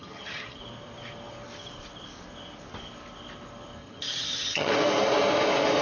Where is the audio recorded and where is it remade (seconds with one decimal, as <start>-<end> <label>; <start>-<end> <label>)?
0.0-0.6 remade; 0.6-3.8 recorded; 3.8-4.7 remade; 4.7-5.8 recorded